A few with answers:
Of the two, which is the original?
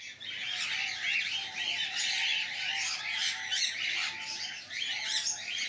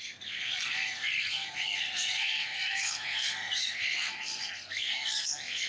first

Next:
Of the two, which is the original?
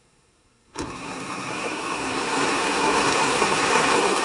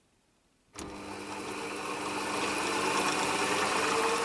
second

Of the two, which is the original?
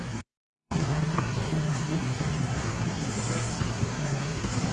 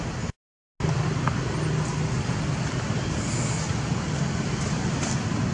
second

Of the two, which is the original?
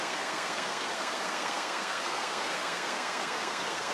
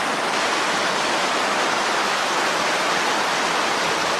second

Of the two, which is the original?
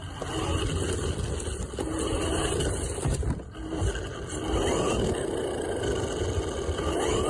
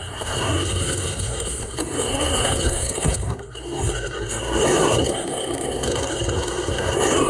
first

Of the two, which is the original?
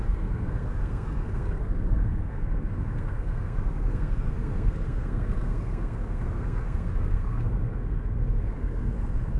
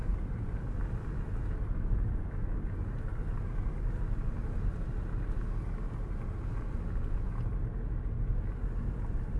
second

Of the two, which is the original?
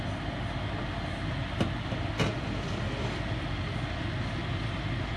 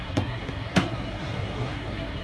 first